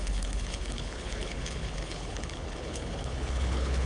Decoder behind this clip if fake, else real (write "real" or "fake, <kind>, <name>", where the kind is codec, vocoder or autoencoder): fake, codec, HILCodec